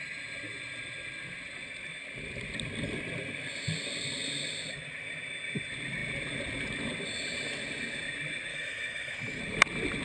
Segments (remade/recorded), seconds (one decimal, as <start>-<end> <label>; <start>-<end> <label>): 0.0-8.5 recorded; 8.5-9.4 remade; 9.4-10.0 recorded